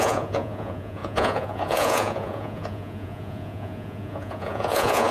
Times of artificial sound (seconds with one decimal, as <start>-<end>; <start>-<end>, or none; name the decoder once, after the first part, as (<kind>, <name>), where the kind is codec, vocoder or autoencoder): 0.0-5.1 (vocoder, Vocos)